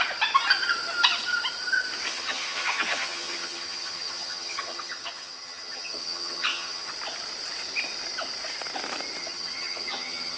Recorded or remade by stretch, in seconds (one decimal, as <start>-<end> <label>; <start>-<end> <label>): 0.0-2.1 recorded; 2.1-6.9 remade; 6.9-9.2 recorded; 9.2-10.4 remade